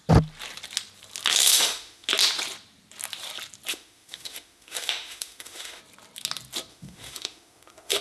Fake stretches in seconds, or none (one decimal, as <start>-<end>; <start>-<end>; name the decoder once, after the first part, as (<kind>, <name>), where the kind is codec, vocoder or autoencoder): 1.3-2.1 (autoencoder, DAC-VAE); 3.7-5.8; 6.7-8.0